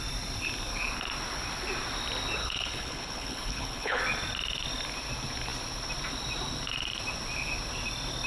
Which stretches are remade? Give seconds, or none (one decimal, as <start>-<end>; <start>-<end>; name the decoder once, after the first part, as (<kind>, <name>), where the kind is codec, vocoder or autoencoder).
2.4-4.0 (codec, HILCodec)